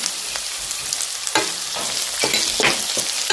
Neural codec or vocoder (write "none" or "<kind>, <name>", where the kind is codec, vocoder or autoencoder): none